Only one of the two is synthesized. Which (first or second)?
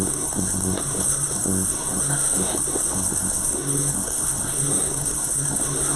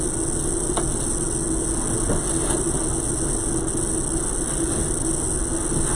first